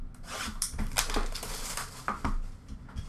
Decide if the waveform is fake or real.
real